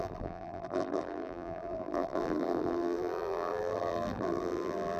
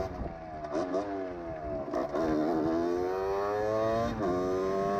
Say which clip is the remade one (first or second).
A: first